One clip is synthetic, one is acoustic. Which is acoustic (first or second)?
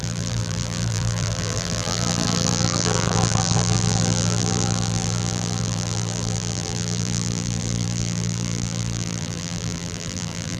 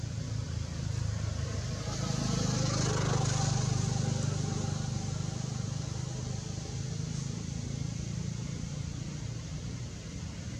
second